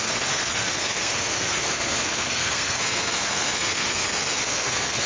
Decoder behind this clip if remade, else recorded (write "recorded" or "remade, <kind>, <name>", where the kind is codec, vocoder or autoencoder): remade, codec, SNAC